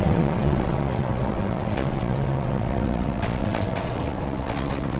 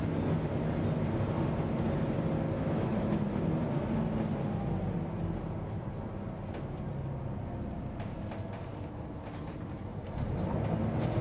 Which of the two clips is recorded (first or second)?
second